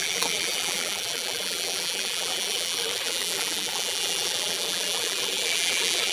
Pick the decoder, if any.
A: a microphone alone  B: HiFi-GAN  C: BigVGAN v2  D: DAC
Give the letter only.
C